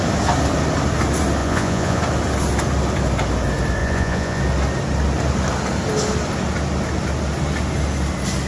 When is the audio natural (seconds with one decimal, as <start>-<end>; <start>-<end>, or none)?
0.0-1.4; 2.0-3.8; 4.4-8.5

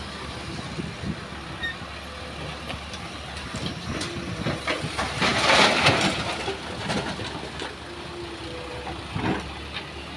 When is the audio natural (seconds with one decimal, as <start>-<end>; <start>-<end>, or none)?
0.0-10.2